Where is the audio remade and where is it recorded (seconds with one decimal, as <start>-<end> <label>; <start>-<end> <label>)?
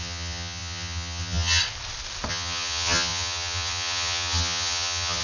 0.0-1.6 remade; 1.6-2.3 recorded; 2.3-5.2 remade